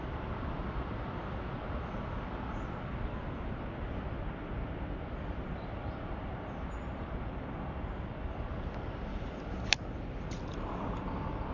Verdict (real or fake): real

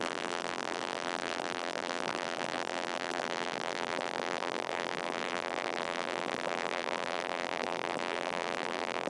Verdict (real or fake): fake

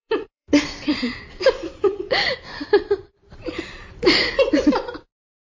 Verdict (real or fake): fake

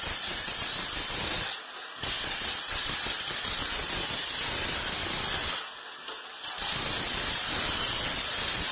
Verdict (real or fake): real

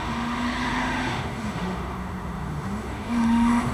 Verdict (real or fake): fake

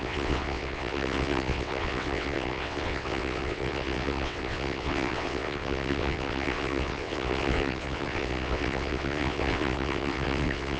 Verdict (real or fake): fake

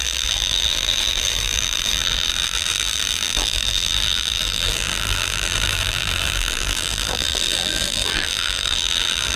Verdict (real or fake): fake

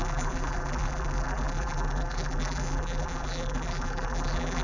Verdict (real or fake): fake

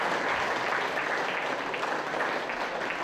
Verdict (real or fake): real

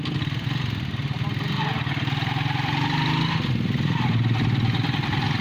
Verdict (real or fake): real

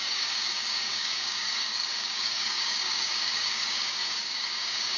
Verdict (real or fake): fake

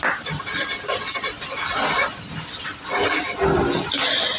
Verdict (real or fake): real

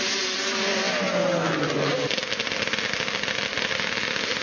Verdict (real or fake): real